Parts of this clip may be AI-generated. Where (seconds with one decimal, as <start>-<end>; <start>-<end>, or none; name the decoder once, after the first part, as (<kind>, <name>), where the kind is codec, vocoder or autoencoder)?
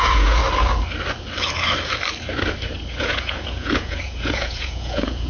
0.0-0.4 (vocoder, Vocos); 3.0-5.3